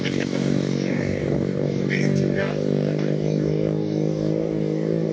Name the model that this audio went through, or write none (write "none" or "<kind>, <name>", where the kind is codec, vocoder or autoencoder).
codec, DAC